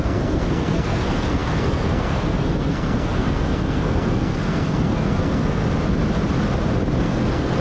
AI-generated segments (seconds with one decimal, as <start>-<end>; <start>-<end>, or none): 0.0-5.6; 7.0-7.6